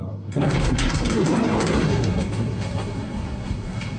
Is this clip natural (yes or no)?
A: no